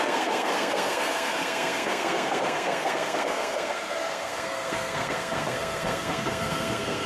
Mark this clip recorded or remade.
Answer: remade